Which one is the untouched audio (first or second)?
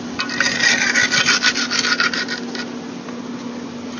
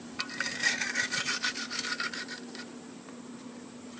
first